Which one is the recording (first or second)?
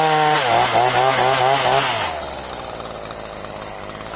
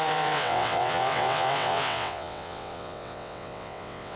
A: first